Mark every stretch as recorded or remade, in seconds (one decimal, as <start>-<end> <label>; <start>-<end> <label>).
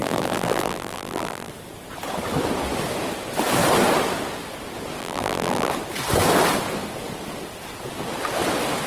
0.0-1.5 remade; 1.5-5.0 recorded; 5.0-5.7 remade; 5.7-8.9 recorded